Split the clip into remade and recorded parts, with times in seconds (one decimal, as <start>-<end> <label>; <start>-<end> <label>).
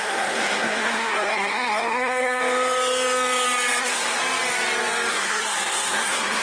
0.0-2.4 remade; 2.4-3.8 recorded; 3.8-4.2 remade; 4.2-5.1 recorded; 5.1-6.4 remade